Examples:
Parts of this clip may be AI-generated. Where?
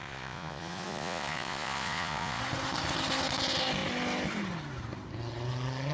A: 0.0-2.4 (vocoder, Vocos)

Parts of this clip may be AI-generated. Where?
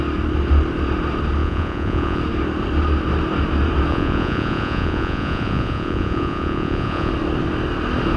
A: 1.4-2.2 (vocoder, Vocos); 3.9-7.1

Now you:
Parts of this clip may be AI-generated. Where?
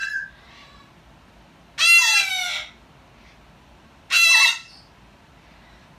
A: none